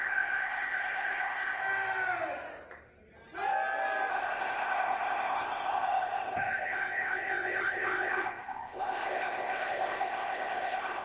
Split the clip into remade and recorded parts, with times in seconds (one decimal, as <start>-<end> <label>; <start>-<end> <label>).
0.0-1.6 remade; 1.6-4.1 recorded; 4.1-11.0 remade